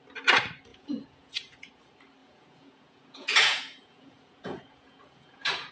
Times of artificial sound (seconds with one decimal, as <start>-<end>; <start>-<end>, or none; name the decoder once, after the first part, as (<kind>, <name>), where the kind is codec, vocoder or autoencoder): 0.7-1.8 (vocoder, Vocos); 2.2-5.7